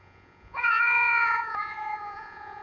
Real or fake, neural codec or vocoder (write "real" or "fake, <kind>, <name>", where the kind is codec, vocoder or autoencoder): fake, vocoder, Vocos